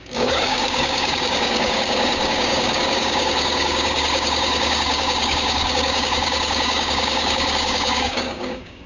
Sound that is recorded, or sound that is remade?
remade